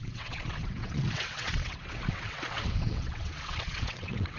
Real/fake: fake